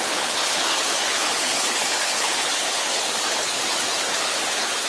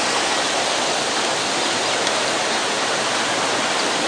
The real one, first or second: second